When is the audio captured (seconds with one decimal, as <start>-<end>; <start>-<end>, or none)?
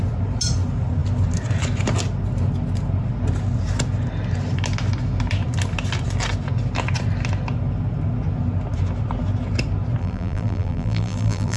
0.0-10.0